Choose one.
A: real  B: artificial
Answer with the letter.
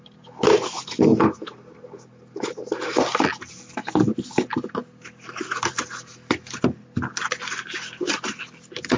A